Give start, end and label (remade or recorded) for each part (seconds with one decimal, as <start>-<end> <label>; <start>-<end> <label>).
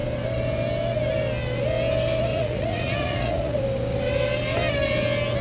0.0-2.3 recorded; 2.3-3.6 remade; 3.6-5.4 recorded